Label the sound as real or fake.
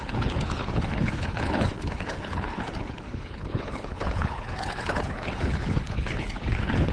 fake